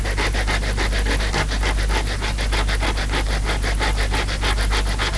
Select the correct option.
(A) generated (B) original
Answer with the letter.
B